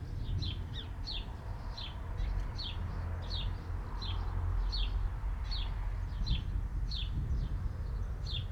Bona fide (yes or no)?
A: yes